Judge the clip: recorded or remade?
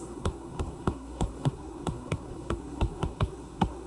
remade